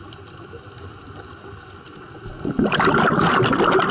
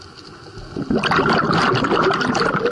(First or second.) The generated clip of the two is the first